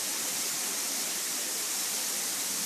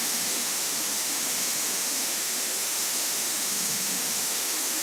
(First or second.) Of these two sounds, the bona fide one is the first